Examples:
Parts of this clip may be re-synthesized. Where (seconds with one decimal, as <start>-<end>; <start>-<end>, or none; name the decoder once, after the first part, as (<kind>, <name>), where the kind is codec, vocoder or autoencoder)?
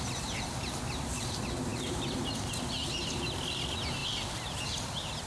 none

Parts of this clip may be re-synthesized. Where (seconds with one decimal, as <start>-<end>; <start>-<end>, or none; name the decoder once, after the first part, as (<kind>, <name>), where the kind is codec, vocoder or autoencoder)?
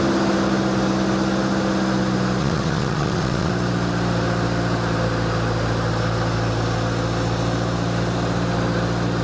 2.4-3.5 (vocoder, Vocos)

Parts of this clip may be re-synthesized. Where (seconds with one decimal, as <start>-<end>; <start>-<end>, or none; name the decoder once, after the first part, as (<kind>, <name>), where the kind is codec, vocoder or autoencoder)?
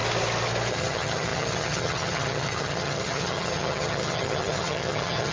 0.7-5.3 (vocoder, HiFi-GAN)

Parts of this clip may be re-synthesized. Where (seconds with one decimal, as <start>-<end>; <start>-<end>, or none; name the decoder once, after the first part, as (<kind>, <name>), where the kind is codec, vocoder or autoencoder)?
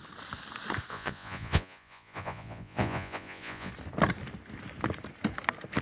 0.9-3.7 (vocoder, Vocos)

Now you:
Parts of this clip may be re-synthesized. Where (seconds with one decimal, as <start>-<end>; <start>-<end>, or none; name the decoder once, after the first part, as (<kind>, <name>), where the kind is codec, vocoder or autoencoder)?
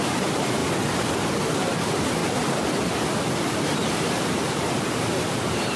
0.0-0.6 (vocoder, BigVGAN v2); 1.6-2.2; 3.1-5.8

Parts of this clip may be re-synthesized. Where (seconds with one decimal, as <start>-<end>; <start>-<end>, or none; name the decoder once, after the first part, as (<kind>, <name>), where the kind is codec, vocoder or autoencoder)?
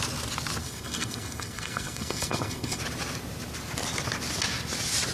0.6-2.8 (codec, SNAC)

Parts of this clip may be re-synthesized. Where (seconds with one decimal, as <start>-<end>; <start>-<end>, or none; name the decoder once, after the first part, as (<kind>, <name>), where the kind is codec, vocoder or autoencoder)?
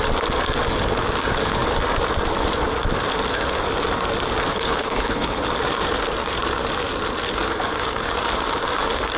4.5-5.4 (codec, HILCodec)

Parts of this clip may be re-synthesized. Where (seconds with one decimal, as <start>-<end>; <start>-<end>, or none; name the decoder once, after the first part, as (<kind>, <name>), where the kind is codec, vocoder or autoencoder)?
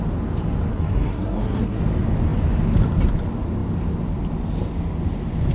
0.7-1.8 (codec, SNAC)